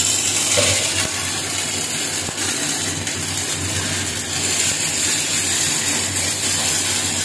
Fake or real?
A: real